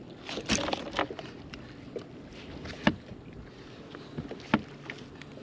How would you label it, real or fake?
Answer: real